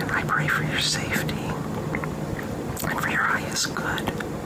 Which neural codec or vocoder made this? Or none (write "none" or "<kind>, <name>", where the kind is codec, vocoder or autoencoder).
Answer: none